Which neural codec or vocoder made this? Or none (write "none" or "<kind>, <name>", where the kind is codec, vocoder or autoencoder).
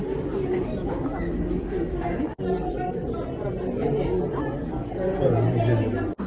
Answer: none